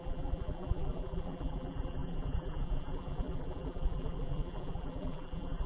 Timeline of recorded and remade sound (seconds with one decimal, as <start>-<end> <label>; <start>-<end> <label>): 0.0-5.7 remade